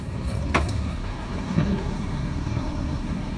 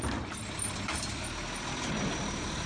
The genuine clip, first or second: second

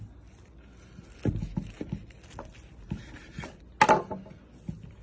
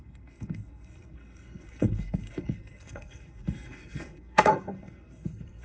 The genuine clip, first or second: first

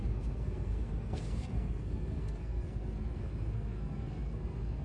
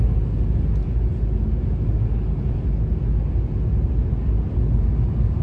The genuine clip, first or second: second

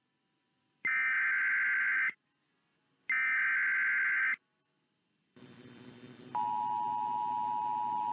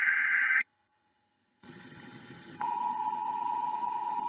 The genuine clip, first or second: first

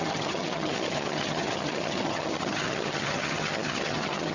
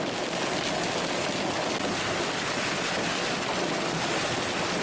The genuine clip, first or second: second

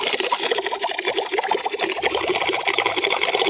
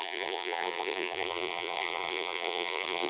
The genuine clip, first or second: first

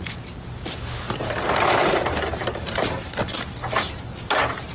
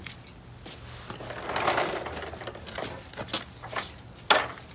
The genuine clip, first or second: second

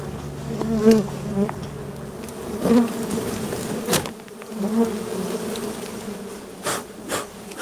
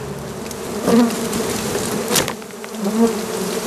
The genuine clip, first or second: second